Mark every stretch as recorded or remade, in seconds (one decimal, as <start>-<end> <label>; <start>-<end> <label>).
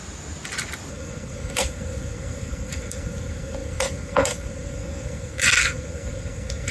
0.0-0.9 recorded; 0.9-6.7 remade